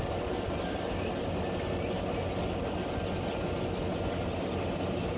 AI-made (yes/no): no